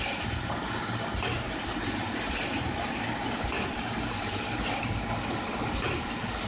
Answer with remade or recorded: remade